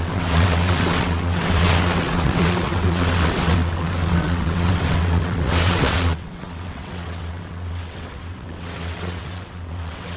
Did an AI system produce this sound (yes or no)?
yes